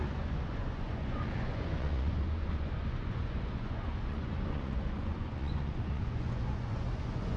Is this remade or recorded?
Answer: remade